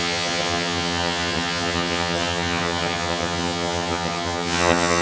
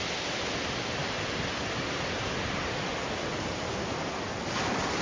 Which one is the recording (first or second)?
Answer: second